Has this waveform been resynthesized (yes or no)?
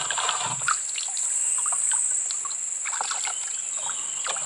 no